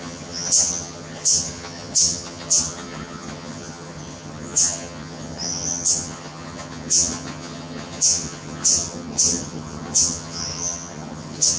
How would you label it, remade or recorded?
remade